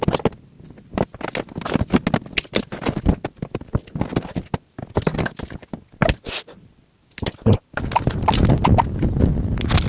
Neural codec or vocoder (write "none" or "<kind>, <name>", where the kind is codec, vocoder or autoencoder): none